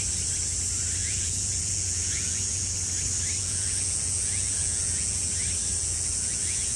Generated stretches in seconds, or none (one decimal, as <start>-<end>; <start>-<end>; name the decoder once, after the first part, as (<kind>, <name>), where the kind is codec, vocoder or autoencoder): 1.0-2.7 (vocoder, Vocos); 3.4-5.3; 5.8-6.8